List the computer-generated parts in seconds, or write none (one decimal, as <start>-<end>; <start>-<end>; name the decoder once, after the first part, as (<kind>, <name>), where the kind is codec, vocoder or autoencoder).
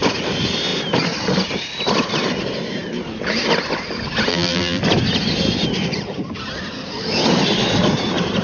4.3-4.8 (vocoder, BigVGAN v2)